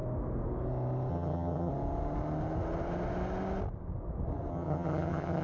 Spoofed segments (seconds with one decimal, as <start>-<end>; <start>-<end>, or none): 1.1-1.7; 4.5-5.4